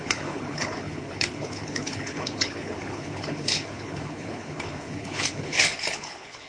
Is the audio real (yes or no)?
no